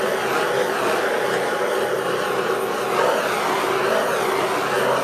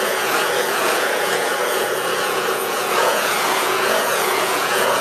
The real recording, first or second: first